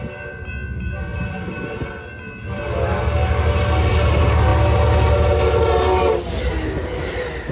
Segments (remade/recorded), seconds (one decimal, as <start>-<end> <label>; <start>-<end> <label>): 0.0-7.5 recorded